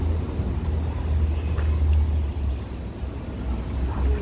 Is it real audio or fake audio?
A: real